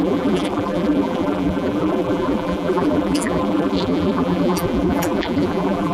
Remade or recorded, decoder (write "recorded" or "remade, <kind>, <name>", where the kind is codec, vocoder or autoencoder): remade, vocoder, BigVGAN v2